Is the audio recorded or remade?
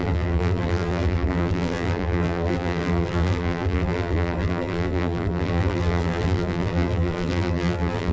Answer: remade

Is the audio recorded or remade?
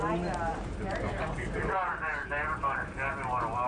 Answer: remade